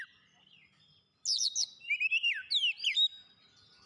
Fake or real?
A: real